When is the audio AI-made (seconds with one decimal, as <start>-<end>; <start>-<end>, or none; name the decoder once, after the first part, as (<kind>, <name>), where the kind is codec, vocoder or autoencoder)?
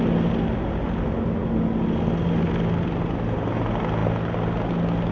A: none